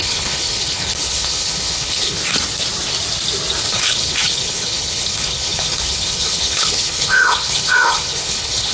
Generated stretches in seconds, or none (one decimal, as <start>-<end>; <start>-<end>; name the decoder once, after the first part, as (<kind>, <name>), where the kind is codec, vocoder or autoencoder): 0.0-2.2 (codec, HILCodec); 3.6-8.7